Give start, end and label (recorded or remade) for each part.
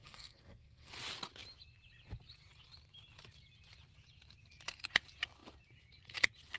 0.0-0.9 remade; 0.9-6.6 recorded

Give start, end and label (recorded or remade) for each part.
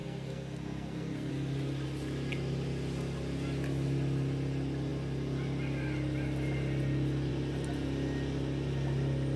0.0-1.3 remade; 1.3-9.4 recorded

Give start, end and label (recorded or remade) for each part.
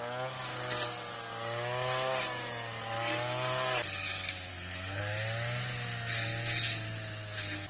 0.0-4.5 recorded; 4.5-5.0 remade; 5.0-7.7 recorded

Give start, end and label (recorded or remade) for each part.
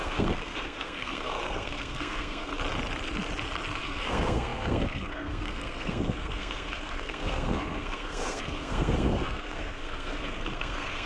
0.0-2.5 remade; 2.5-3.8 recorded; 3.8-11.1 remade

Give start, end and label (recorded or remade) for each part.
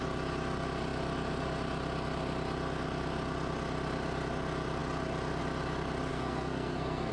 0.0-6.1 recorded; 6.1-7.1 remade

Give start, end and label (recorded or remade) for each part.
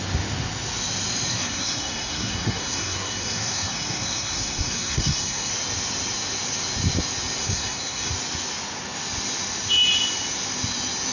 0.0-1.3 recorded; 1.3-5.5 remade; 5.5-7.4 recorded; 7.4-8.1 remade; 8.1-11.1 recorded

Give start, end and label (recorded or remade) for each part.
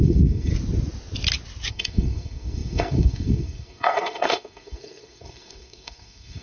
0.0-0.5 remade; 0.5-1.7 recorded; 1.7-6.4 remade